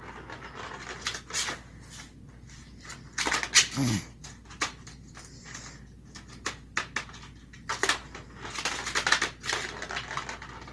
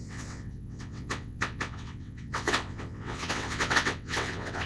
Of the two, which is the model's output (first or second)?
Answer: second